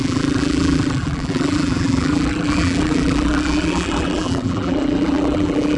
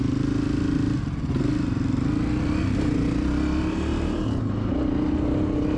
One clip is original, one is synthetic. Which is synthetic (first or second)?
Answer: first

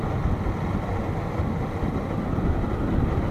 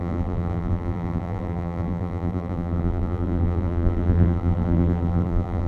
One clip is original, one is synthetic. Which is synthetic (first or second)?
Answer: second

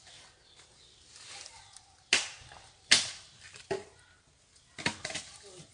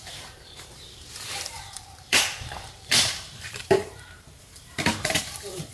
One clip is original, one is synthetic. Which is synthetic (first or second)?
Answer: second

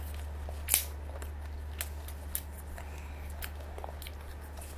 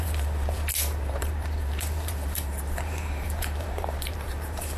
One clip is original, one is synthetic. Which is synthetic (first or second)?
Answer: second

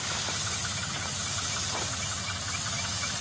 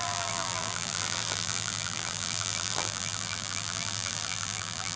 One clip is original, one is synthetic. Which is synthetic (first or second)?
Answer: second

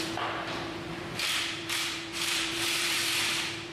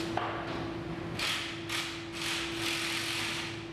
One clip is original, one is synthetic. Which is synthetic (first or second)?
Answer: first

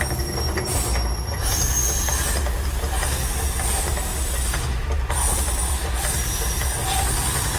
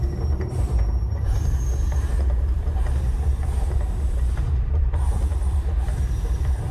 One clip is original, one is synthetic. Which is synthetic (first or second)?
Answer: second